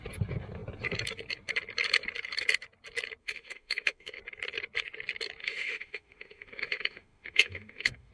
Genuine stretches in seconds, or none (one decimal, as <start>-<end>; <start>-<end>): 0.0-3.2; 4.2-5.4

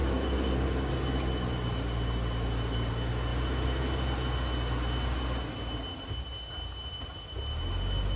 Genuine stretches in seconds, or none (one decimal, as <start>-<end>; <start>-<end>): 0.9-8.2

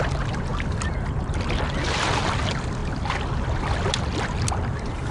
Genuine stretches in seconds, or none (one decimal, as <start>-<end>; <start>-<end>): 0.0-0.5; 1.3-5.1

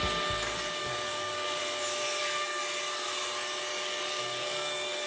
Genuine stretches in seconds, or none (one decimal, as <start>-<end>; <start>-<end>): 0.0-0.8; 1.6-2.2; 2.8-3.7

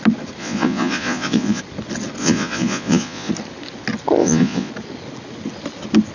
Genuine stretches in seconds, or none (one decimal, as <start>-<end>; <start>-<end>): 0.0-0.4; 1.6-2.2; 3.3-4.2; 4.7-6.1

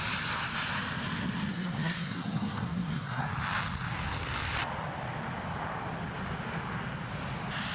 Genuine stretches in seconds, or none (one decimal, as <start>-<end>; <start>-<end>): 0.0-1.5; 3.3-7.7

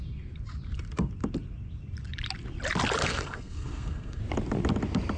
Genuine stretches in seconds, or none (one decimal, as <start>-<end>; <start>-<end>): 0.0-3.0; 4.2-5.2